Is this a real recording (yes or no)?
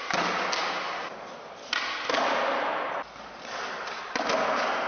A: yes